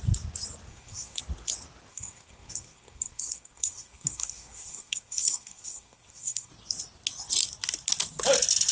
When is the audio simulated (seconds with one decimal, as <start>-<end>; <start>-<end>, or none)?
0.7-1.2; 1.9-6.5